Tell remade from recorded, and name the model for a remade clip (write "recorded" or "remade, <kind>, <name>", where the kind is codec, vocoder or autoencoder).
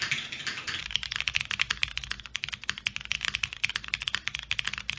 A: recorded